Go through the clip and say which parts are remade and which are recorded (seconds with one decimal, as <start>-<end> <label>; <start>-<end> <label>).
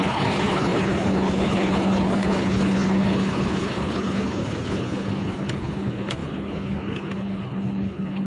0.0-8.3 remade